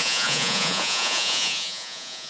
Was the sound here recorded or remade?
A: remade